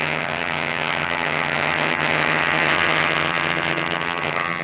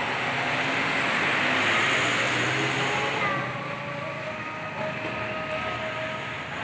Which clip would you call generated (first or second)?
first